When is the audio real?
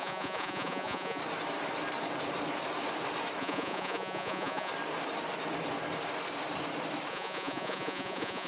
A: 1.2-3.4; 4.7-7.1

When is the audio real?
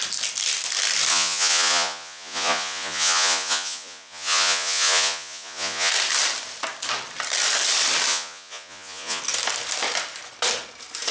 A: 0.0-1.1; 5.9-8.1; 9.2-11.1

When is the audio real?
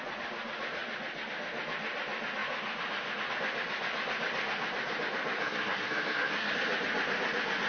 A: 0.0-5.4; 6.5-7.7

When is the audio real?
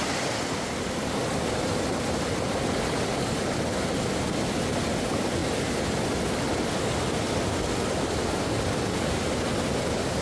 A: 0.0-10.2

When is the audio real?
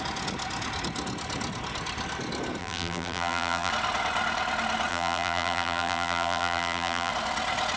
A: 0.0-2.6; 3.7-4.9; 7.1-7.8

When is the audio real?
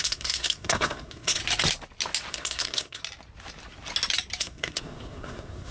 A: 1.4-2.3; 3.0-4.4